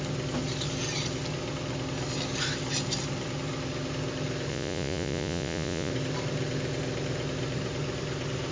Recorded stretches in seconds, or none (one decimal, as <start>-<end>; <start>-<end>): 0.0-4.5; 5.9-8.5